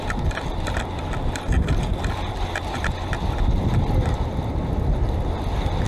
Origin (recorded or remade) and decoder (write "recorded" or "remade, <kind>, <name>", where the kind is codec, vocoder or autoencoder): recorded